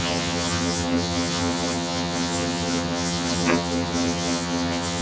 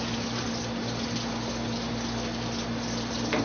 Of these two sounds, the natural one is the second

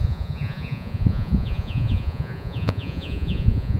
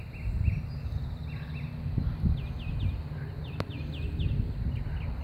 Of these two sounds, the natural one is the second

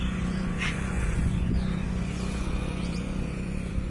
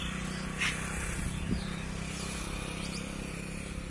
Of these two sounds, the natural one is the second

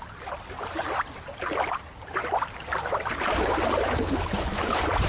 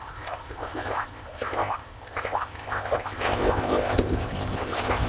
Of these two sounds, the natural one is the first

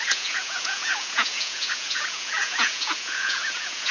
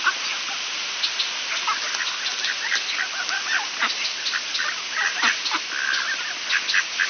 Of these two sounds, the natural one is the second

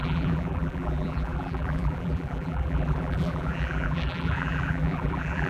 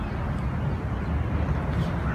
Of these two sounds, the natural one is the second